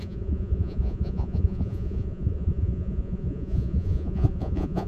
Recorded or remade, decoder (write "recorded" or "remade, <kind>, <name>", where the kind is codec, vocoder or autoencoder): remade, vocoder, Vocos